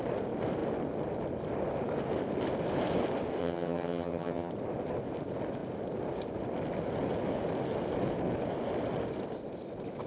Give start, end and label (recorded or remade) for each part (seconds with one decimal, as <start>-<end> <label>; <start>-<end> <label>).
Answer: 0.0-3.4 recorded; 3.4-4.5 remade; 4.5-10.1 recorded

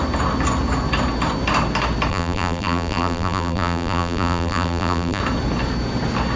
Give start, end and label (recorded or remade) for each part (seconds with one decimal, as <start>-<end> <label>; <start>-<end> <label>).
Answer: 0.0-2.1 recorded; 2.1-5.2 remade; 5.2-6.4 recorded

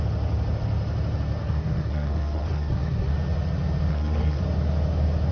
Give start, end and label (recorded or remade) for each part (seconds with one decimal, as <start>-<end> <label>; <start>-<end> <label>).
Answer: 0.0-1.4 recorded; 1.4-3.1 remade; 3.1-3.9 recorded; 3.9-4.4 remade; 4.4-5.3 recorded

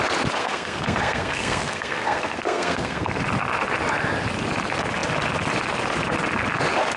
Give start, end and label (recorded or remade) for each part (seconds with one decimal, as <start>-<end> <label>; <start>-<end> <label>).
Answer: 0.0-0.4 recorded; 0.4-3.2 remade; 3.2-7.0 recorded

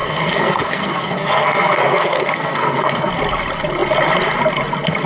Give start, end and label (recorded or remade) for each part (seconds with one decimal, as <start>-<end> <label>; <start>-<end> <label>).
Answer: 0.0-3.1 remade; 3.1-5.1 recorded

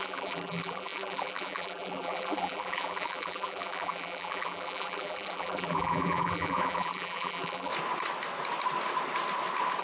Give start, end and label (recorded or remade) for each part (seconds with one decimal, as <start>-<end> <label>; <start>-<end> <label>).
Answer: 0.0-7.7 remade; 7.7-9.8 recorded

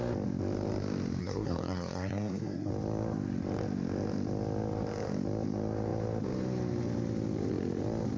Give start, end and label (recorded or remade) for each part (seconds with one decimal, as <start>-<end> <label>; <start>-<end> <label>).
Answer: 0.0-1.2 recorded; 1.2-2.7 remade; 2.7-8.2 recorded